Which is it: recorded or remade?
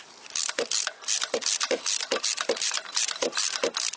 recorded